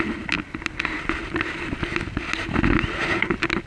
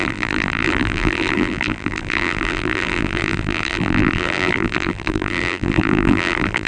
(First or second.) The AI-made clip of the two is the second